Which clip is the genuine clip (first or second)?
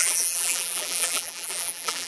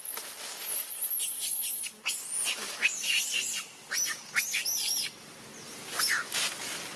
second